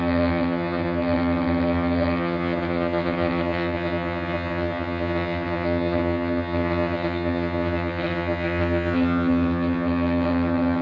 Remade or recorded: remade